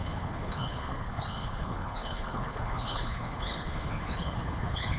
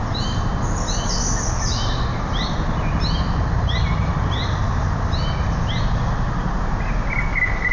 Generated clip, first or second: first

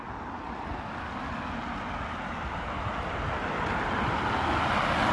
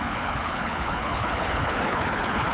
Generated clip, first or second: second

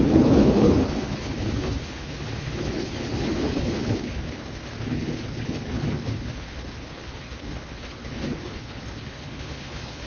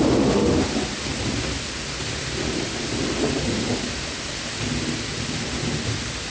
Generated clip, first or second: first